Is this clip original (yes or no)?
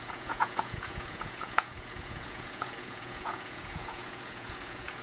no